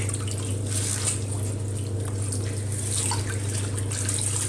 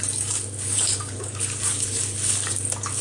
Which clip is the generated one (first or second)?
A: second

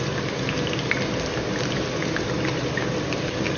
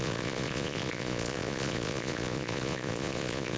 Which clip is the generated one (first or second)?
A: second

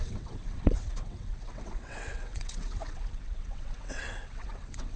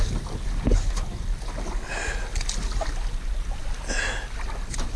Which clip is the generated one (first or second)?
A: first